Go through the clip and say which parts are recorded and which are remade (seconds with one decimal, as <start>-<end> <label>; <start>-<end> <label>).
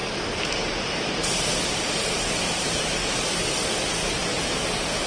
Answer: 0.0-3.1 remade; 3.1-5.1 recorded